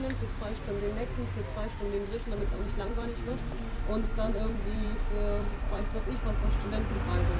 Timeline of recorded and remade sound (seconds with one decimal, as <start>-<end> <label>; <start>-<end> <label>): 0.0-2.5 recorded; 2.5-3.3 remade; 3.3-4.1 recorded; 4.1-6.0 remade; 6.0-7.4 recorded